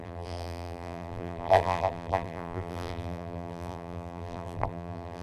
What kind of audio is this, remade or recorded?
remade